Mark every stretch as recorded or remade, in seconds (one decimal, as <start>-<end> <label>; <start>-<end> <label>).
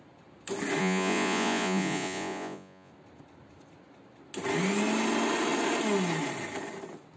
0.0-0.8 recorded; 0.8-2.9 remade; 2.9-7.2 recorded